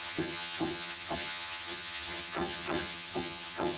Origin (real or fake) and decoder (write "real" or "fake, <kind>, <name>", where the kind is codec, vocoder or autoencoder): fake, vocoder, HiFi-GAN